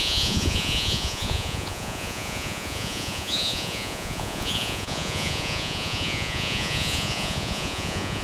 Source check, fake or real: fake